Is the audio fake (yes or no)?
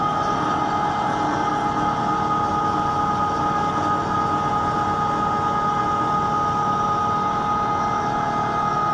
no